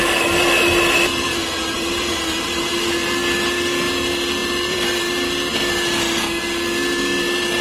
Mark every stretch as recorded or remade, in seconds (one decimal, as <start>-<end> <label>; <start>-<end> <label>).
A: 0.0-1.1 recorded; 1.1-2.1 remade; 2.1-4.4 recorded; 4.4-5.0 remade; 5.0-7.6 recorded